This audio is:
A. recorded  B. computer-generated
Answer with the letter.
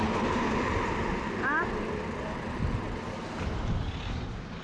A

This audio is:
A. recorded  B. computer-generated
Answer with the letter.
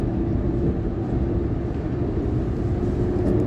A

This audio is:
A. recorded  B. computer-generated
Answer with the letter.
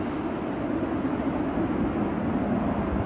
A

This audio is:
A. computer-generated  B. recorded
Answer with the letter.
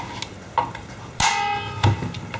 B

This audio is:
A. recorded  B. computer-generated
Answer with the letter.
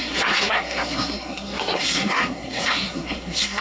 B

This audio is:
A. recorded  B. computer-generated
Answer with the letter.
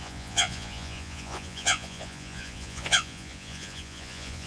B